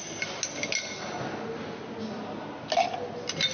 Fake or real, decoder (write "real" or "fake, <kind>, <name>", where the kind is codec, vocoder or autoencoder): real